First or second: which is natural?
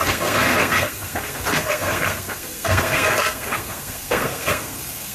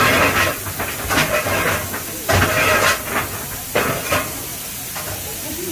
second